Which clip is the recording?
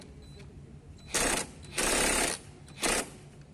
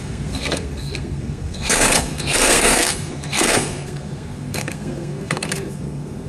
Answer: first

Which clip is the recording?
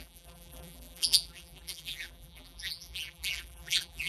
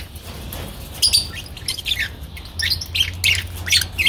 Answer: second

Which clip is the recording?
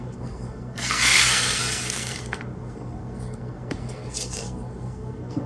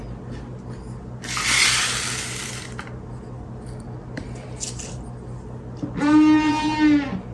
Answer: second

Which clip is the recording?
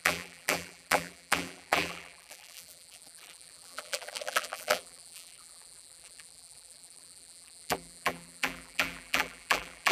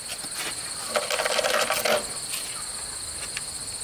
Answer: second